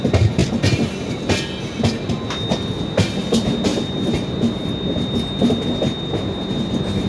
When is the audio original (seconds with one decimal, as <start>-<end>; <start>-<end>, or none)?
0.0-7.1